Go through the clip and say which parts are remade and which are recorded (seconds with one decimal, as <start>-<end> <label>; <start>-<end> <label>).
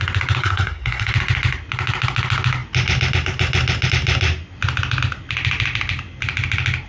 0.0-0.4 recorded; 0.4-1.1 remade; 1.1-6.9 recorded